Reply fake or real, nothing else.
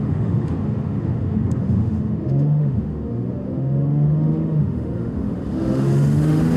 fake